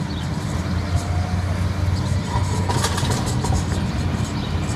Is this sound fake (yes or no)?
no